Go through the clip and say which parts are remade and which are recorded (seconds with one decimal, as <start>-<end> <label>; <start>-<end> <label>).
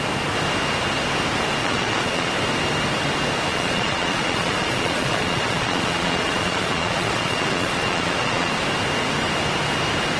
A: 0.0-1.6 recorded; 1.6-2.3 remade; 2.3-3.5 recorded; 3.5-8.5 remade; 8.5-10.2 recorded